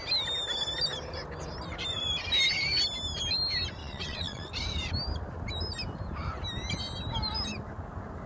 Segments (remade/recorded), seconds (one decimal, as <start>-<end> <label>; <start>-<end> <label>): 0.0-3.8 recorded; 3.8-4.5 remade; 4.5-8.3 recorded